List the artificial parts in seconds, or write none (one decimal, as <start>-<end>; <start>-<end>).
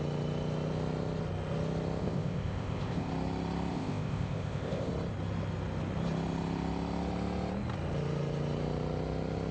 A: 2.0-3.1; 3.7-4.9